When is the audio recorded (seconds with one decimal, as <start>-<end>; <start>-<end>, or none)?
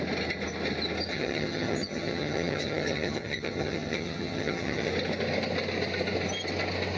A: 0.0-1.1; 4.9-7.0